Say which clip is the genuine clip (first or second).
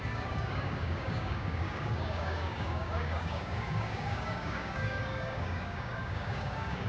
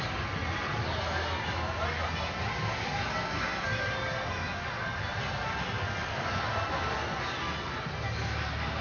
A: second